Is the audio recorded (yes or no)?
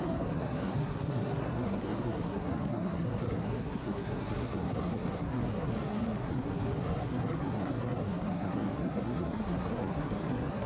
no